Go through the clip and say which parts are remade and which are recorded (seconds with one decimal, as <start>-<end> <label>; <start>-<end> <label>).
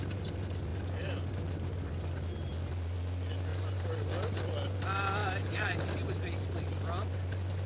0.0-3.5 recorded; 3.5-4.1 remade; 4.1-5.2 recorded; 5.2-6.1 remade; 6.1-7.7 recorded